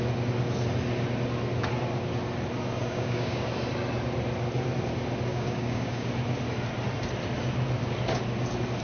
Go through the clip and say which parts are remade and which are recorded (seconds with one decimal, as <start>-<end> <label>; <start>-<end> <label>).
0.0-2.8 recorded; 2.8-3.5 remade; 3.5-5.3 recorded; 5.3-6.1 remade; 6.1-8.8 recorded